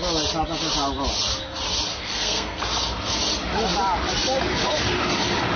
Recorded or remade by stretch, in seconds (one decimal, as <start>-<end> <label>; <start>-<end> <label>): 0.0-1.9 recorded; 1.9-2.6 remade; 2.6-5.6 recorded